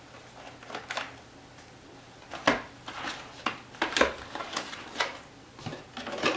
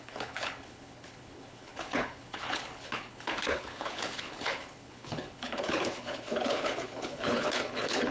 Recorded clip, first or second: first